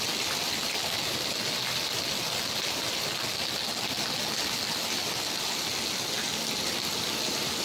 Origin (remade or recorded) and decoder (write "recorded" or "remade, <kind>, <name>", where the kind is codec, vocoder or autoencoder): recorded